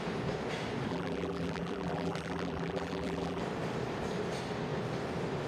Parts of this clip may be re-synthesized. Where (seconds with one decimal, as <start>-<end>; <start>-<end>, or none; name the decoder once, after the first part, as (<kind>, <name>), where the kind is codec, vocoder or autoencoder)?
0.9-3.4 (vocoder, BigVGAN v2)